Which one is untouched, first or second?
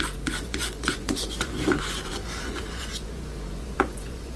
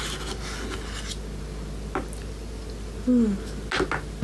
second